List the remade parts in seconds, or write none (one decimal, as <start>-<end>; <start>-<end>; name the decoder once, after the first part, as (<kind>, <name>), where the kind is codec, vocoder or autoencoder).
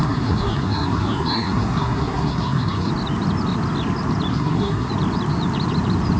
0.0-2.9 (codec, SNAC); 4.3-4.9